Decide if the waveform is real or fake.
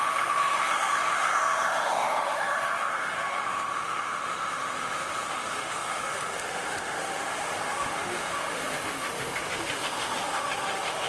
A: fake